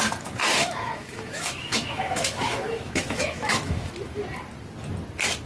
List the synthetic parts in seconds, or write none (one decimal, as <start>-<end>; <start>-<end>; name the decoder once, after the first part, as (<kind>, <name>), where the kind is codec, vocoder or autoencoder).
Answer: 0.6-3.9 (autoencoder, DAC-VAE)